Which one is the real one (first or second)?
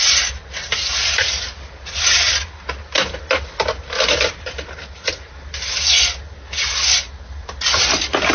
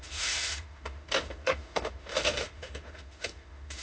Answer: first